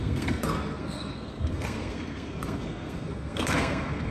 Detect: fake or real fake